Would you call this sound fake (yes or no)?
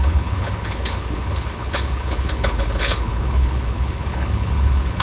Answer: yes